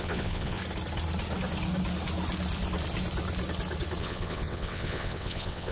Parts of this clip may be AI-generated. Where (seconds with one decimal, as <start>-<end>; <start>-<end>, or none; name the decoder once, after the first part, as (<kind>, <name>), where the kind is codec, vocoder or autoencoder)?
0.0-0.6 (vocoder, WaveNeXt); 4.0-5.7